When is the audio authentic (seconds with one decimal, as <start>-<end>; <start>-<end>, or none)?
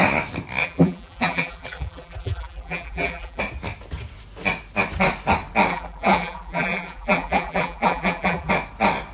0.0-0.6; 3.4-5.7; 8.5-9.1